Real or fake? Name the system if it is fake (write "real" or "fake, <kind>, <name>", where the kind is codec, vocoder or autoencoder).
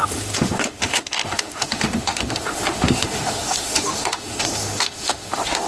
fake, autoencoder, DAC-VAE